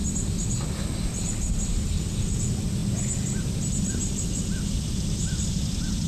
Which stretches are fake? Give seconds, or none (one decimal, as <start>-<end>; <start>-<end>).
1.1-2.8; 3.6-6.1